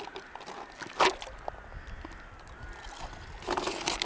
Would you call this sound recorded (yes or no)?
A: yes